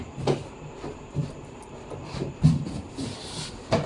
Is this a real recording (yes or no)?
no